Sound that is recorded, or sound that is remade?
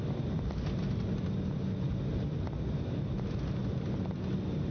recorded